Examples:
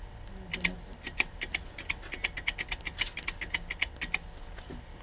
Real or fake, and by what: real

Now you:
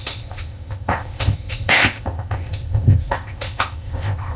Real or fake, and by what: fake, codec, ZipCodec